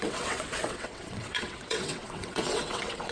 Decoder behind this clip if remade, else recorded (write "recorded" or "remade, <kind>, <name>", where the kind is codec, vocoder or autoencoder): remade, vocoder, WaveNeXt